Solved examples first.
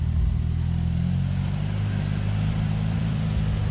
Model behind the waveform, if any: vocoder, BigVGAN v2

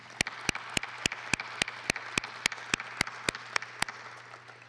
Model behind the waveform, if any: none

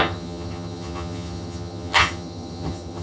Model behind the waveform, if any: vocoder, HiFi-GAN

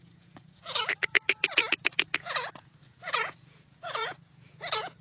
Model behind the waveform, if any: vocoder, Vocos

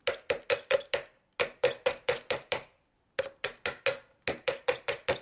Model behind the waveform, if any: none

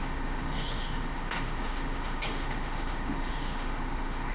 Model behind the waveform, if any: autoencoder, DAC-VAE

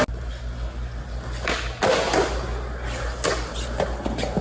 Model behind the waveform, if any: none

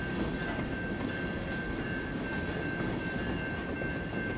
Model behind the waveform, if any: none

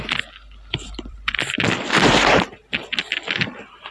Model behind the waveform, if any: vocoder, BigVGAN v2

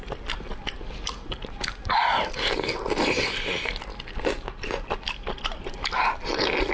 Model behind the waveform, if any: none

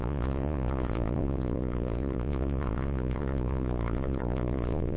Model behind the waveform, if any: vocoder, Vocos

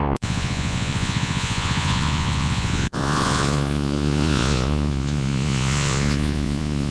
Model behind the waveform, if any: vocoder, Vocos